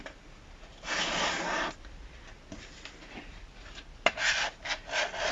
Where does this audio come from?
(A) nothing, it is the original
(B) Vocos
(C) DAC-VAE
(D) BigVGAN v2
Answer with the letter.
A